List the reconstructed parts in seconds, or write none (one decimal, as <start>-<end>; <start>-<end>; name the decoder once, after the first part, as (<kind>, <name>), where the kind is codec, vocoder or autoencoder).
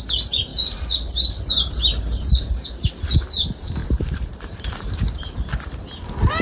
0.5-2.8 (vocoder, BigVGAN v2); 3.8-5.5